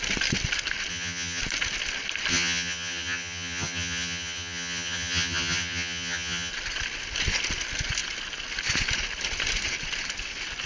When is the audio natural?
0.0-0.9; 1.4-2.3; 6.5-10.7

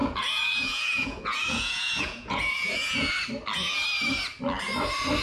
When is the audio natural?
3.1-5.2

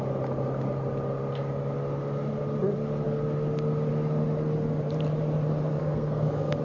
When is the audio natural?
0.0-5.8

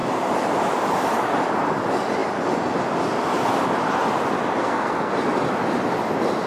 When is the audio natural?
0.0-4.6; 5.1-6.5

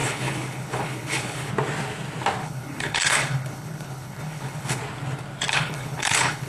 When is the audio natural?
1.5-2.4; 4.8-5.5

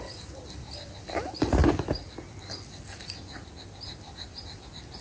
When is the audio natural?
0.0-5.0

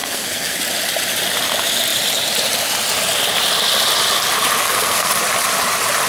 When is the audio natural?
0.6-4.6; 5.1-6.1